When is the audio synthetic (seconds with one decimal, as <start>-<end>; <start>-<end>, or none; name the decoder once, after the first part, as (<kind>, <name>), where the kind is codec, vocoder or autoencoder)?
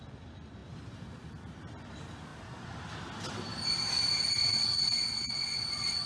4.4-6.1 (vocoder, WaveNeXt)